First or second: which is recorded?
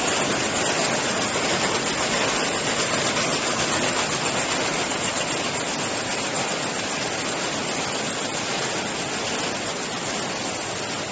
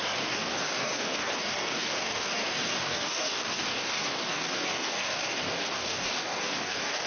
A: first